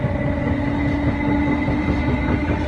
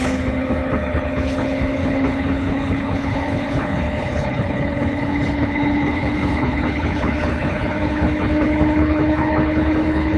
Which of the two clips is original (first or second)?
first